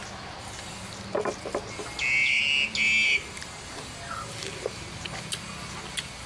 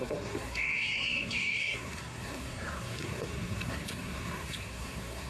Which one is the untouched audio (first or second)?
first